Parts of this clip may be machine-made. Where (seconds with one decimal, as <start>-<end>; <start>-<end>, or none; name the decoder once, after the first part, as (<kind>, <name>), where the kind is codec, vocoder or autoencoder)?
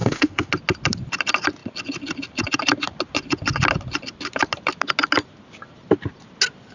0.0-0.5 (autoencoder, DAC-VAE)